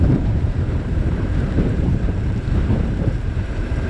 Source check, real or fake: fake